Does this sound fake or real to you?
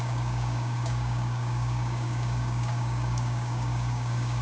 fake